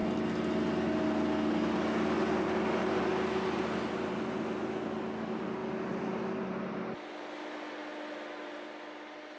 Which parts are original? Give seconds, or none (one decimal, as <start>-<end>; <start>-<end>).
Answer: 0.0-9.4